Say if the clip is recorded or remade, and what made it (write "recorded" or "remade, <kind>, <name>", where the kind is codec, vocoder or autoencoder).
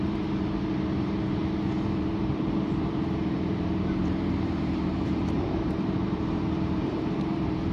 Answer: remade, vocoder, BigVGAN v2